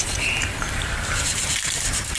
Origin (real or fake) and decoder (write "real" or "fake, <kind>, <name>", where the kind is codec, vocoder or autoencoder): fake, vocoder, BigVGAN v2